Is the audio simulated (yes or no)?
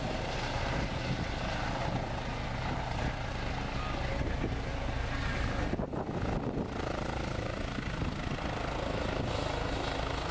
no